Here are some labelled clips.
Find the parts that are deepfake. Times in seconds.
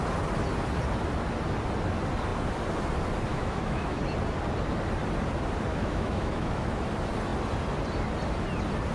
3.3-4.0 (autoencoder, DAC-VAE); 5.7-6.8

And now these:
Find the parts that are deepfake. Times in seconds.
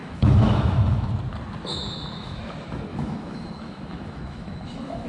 0.0-1.1 (autoencoder, DAC-VAE); 1.7-2.4; 2.9-5.1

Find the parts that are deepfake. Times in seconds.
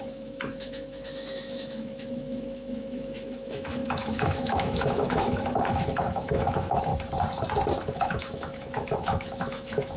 0.0-6.9 (autoencoder, DAC-VAE); 7.9-10.0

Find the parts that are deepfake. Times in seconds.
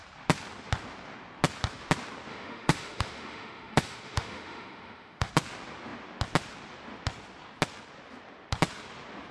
2.3-5.3 (autoencoder, DAC-VAE)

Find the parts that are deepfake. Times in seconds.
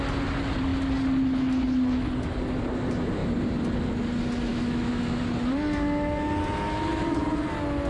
4.5-5.2 (autoencoder, DAC-VAE)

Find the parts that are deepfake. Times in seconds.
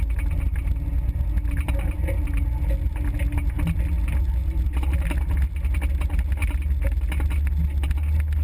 none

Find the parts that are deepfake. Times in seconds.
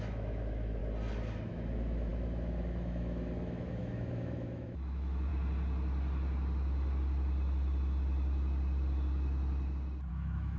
0.0-0.8 (autoencoder, DAC-VAE); 1.5-5.3; 10.1-10.6